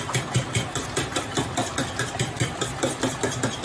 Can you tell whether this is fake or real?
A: fake